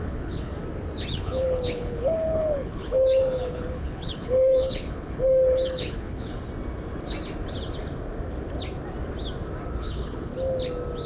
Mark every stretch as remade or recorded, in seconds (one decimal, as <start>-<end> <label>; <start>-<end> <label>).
0.0-0.5 remade; 0.5-1.1 recorded; 1.1-6.3 remade; 6.3-9.8 recorded; 9.8-10.3 remade; 10.3-11.1 recorded